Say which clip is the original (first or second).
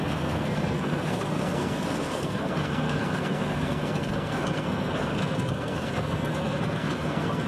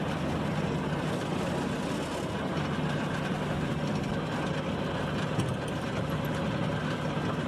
second